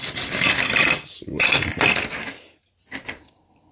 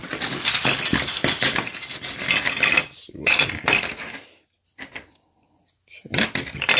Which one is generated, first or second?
first